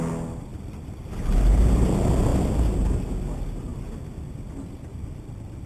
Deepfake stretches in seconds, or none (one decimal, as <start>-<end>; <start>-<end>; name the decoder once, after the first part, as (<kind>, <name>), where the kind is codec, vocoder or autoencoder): none